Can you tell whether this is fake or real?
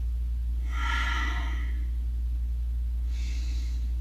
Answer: real